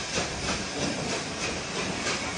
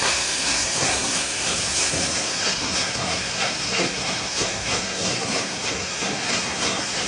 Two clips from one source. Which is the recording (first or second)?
first